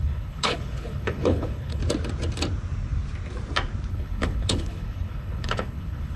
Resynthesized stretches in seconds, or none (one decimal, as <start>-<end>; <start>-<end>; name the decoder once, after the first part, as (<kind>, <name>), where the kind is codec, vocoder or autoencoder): 0.0-1.8 (codec, HILCodec); 3.9-6.2